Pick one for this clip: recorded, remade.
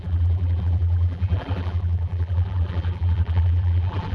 remade